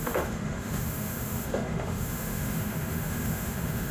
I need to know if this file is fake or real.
fake